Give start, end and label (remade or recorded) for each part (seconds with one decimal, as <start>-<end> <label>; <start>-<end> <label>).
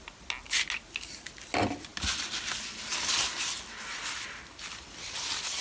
0.0-5.6 recorded